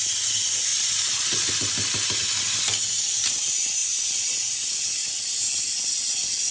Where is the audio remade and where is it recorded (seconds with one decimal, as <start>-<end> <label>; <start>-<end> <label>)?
0.0-0.7 recorded; 0.7-1.5 remade; 1.5-6.5 recorded